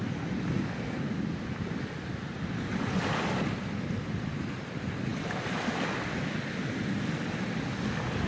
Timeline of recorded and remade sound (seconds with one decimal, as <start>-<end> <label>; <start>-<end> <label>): 0.0-8.3 recorded